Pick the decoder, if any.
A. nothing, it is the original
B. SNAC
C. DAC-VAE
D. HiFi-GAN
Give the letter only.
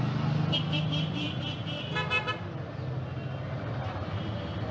A